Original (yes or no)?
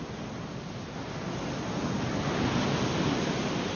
yes